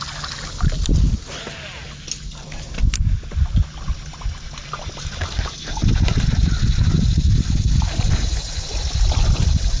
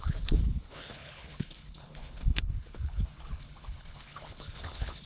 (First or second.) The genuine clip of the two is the first